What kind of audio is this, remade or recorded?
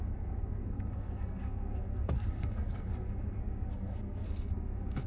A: remade